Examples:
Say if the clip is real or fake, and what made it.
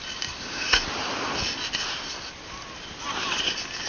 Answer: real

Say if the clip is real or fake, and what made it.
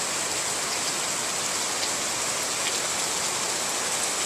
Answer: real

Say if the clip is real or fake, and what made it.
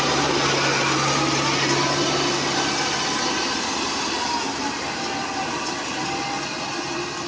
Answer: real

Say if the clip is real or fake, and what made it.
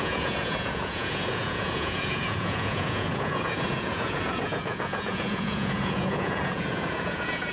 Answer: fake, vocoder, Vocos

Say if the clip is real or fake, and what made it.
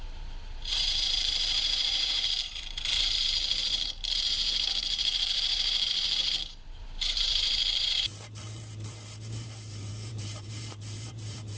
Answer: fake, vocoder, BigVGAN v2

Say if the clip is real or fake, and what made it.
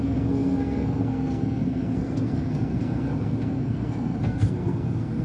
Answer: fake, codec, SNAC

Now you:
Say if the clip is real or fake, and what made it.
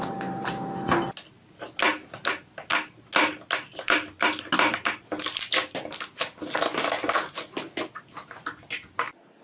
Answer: real